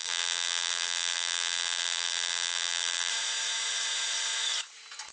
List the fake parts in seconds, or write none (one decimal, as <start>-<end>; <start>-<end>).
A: 0.0-3.1